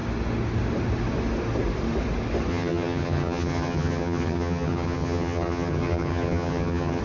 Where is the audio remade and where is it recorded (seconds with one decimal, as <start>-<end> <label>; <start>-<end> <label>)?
0.0-2.5 recorded; 2.5-7.0 remade